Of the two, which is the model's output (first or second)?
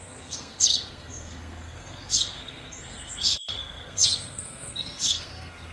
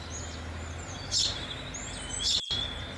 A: first